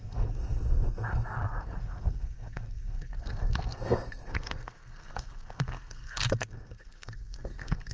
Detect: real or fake fake